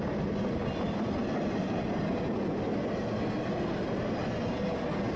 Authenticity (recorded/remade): recorded